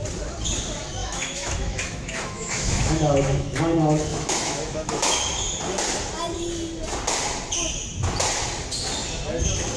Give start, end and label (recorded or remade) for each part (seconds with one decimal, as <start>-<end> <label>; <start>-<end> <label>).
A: 0.0-1.0 recorded; 1.0-3.6 remade; 3.6-4.1 recorded; 4.1-5.2 remade; 5.2-9.8 recorded